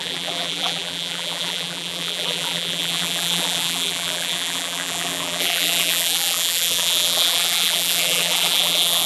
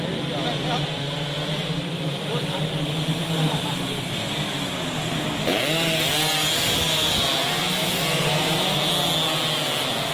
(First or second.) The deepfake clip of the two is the first